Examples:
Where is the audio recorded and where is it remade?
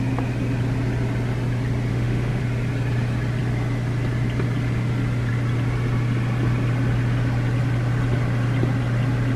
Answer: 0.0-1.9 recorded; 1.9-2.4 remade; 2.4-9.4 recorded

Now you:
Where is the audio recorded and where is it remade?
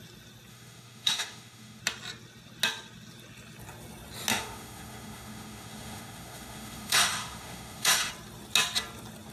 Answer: 0.0-0.5 recorded; 0.5-1.8 remade; 1.8-4.3 recorded; 4.3-8.1 remade; 8.1-9.3 recorded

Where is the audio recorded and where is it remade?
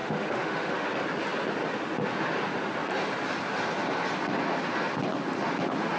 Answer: 0.0-0.9 remade; 0.9-6.0 recorded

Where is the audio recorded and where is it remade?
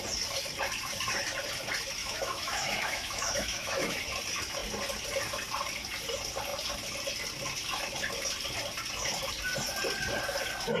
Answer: 0.0-2.0 recorded; 2.0-4.0 remade; 4.0-10.8 recorded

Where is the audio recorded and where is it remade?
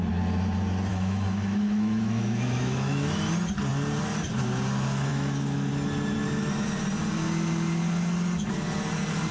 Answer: 0.0-0.9 recorded; 0.9-3.2 remade; 3.2-5.1 recorded; 5.1-5.7 remade; 5.7-9.3 recorded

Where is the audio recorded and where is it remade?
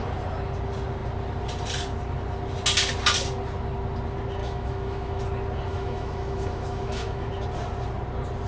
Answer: 0.0-4.4 recorded; 4.4-5.2 remade; 5.2-5.7 recorded; 5.7-7.3 remade; 7.3-8.5 recorded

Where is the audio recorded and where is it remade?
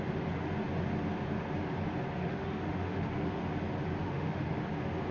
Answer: 0.0-2.2 recorded; 2.2-3.4 remade; 3.4-4.0 recorded; 4.0-4.5 remade; 4.5-5.1 recorded